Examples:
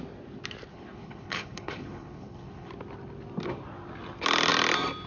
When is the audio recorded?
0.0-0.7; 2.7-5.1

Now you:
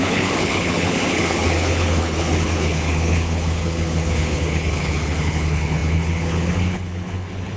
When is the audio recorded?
none

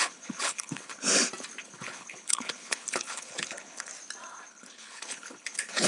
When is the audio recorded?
1.1-1.6; 3.9-4.5

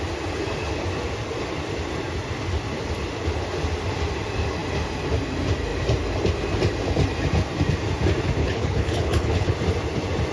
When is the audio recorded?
0.0-8.4; 9.5-10.3

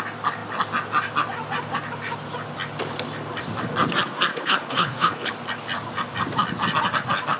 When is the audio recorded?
0.0-4.3; 5.3-7.4

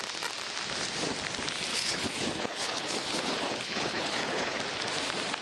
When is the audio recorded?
0.0-1.7; 4.6-5.4

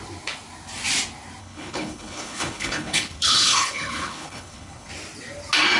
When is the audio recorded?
0.0-1.4; 4.9-5.8

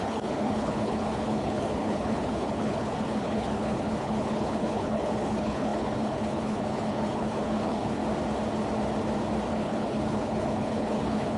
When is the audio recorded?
8.0-9.5